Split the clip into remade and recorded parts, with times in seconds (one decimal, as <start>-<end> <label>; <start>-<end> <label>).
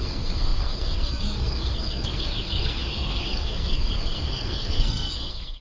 0.0-5.6 remade